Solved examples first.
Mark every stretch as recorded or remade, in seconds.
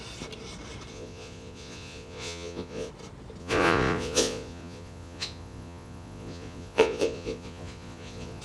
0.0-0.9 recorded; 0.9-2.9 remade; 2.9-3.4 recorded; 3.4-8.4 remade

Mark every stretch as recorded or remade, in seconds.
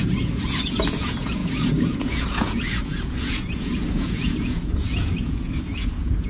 0.0-6.3 remade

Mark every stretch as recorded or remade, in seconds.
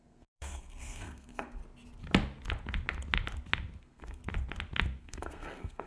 0.0-1.6 remade; 1.6-3.8 recorded; 3.8-4.2 remade; 4.2-5.0 recorded; 5.0-5.9 remade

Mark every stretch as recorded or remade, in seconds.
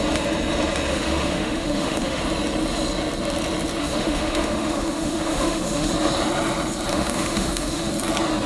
0.0-0.9 recorded; 0.9-2.2 remade; 2.2-3.8 recorded; 3.8-5.9 remade; 5.9-6.9 recorded; 6.9-7.9 remade; 7.9-8.5 recorded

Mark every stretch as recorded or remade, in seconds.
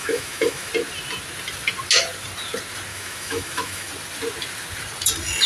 0.0-0.7 remade; 0.7-2.9 recorded; 2.9-3.9 remade; 3.9-5.5 recorded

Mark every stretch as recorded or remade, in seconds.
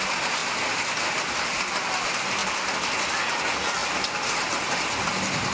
0.0-5.5 recorded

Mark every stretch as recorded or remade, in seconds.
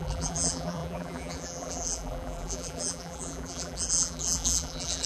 0.0-5.1 remade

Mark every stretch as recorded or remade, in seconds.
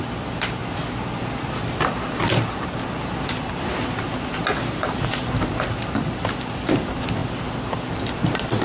0.0-8.6 recorded